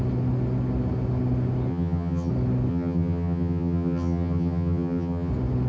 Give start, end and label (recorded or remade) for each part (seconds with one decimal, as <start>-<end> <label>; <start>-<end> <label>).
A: 0.0-1.7 recorded; 1.7-2.3 remade; 2.3-2.7 recorded; 2.7-5.3 remade; 5.3-5.7 recorded